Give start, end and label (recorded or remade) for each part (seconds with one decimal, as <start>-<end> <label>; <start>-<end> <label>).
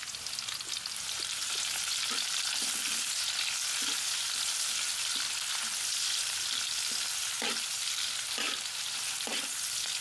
0.0-10.0 recorded